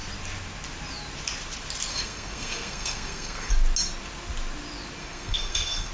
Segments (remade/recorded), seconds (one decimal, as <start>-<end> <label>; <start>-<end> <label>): 0.0-1.9 recorded; 1.9-3.5 remade; 3.5-5.0 recorded; 5.0-5.9 remade